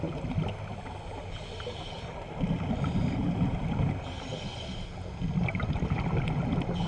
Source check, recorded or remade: recorded